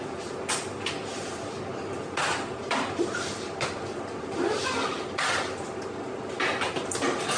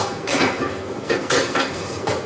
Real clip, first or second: first